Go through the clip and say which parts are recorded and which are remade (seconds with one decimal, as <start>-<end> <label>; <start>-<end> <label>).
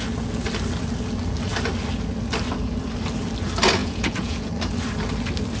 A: 0.0-3.8 recorded; 3.8-4.5 remade; 4.5-5.6 recorded